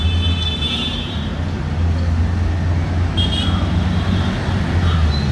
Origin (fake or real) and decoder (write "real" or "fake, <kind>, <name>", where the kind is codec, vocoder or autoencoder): real